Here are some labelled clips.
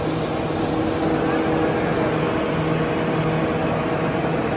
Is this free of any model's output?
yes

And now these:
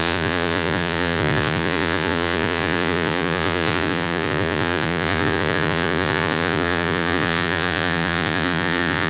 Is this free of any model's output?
no